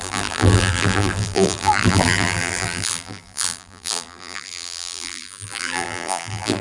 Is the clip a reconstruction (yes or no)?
yes